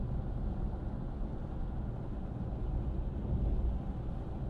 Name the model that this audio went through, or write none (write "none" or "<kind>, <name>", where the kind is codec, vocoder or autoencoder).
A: none